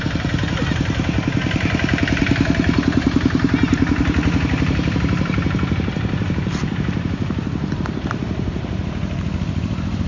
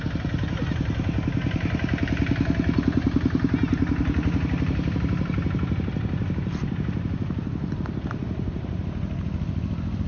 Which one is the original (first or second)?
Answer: second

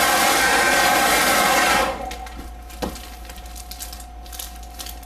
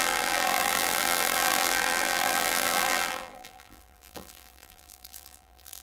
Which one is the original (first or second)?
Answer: first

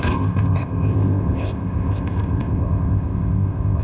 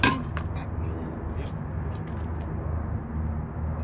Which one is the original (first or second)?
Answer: second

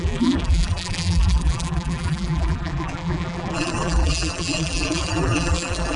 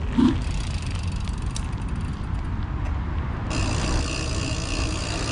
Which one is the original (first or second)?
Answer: second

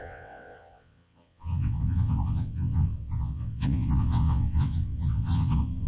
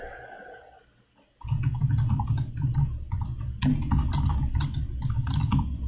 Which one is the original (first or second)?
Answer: second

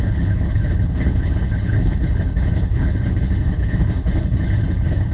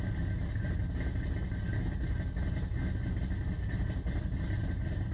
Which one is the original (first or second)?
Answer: second